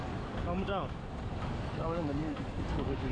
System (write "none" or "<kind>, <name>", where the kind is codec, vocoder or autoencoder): codec, DAC